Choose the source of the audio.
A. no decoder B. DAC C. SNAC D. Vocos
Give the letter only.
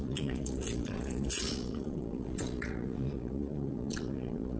D